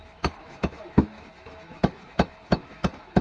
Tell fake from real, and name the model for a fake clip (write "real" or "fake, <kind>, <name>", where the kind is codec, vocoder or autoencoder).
fake, autoencoder, DAC-VAE